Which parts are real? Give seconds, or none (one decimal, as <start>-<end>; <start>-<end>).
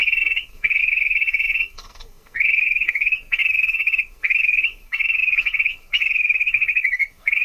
none